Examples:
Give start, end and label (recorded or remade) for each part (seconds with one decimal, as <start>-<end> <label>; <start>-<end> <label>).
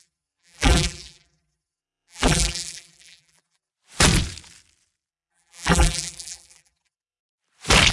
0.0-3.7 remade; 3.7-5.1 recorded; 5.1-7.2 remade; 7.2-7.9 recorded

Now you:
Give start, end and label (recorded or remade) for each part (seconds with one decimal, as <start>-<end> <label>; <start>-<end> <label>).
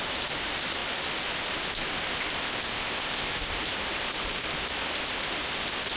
0.0-2.4 recorded; 2.4-3.3 remade; 3.3-6.0 recorded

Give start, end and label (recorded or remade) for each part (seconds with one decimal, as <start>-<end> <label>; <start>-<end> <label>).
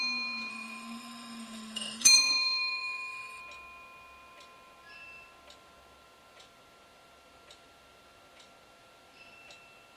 0.0-0.5 recorded; 0.5-3.4 remade; 3.4-10.0 recorded